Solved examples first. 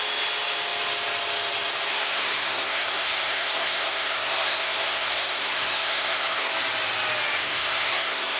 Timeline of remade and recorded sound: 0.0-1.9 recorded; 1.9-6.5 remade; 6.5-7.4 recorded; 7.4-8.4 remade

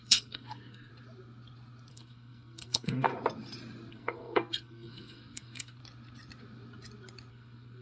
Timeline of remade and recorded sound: 0.0-0.9 remade; 0.9-1.9 recorded; 1.9-3.1 remade; 3.1-3.9 recorded; 3.9-5.8 remade; 5.8-7.3 recorded; 7.3-7.8 remade